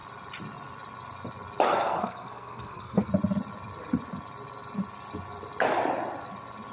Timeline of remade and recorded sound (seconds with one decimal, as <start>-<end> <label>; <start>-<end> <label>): 0.0-1.7 recorded; 1.7-3.1 remade; 3.1-6.7 recorded